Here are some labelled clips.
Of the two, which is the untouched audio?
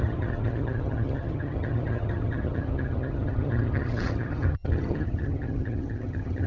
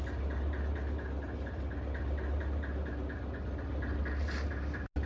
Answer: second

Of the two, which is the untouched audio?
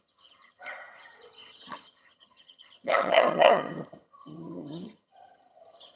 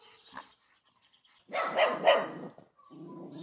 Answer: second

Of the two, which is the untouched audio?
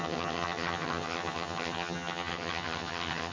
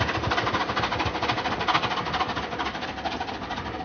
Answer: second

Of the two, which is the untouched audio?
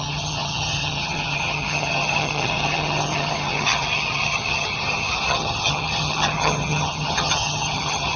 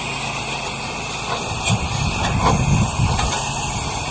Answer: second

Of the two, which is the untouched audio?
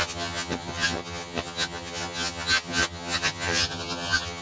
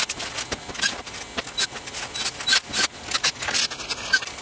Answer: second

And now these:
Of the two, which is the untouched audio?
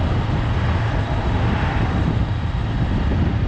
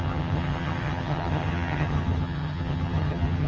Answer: first